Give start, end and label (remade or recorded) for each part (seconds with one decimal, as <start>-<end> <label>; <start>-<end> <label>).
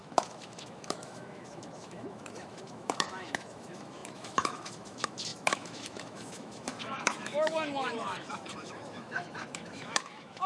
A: 0.0-10.5 remade